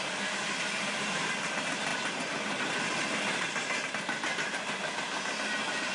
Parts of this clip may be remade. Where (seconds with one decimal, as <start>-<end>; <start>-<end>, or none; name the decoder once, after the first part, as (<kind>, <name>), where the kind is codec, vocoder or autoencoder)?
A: none